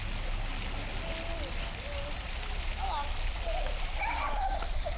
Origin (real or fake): real